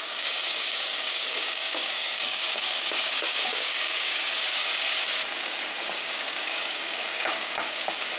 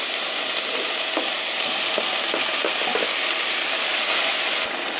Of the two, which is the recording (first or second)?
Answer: second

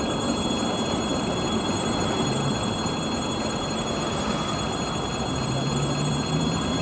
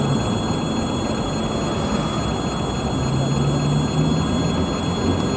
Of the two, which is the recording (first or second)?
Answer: second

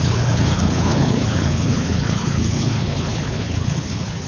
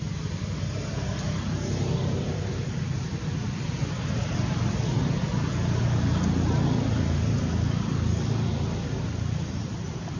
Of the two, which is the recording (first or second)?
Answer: second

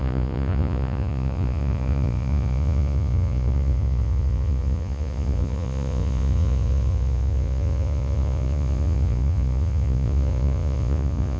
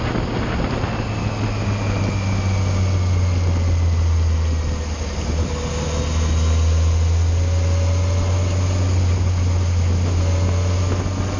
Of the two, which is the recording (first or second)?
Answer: second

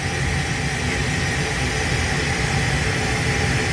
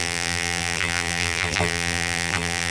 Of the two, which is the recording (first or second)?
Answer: first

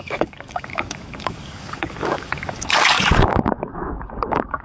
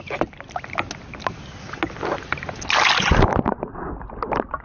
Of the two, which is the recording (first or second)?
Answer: second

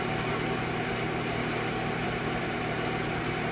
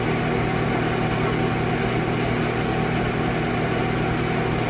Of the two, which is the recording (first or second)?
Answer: second